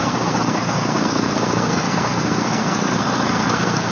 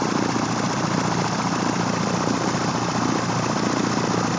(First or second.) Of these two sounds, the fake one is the first